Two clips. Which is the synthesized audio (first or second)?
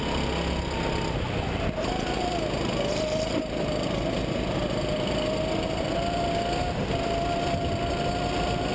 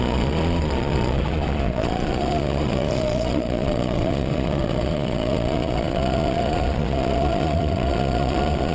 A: second